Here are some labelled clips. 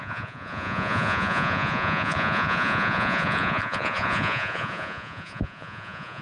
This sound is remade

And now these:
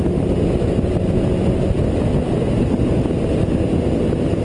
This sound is recorded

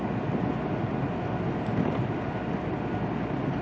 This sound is recorded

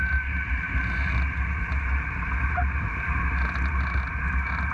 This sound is remade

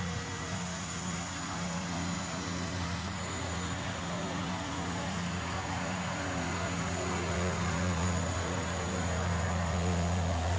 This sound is remade